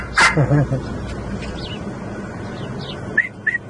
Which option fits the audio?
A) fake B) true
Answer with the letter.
B